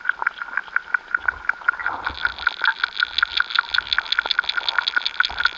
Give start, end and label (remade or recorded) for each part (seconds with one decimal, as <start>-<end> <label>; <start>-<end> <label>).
0.0-5.6 recorded